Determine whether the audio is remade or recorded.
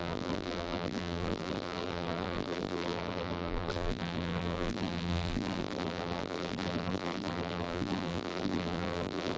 remade